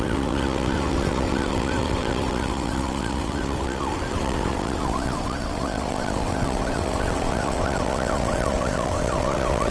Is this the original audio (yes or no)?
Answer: no